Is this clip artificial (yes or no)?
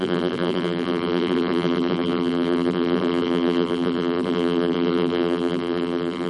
yes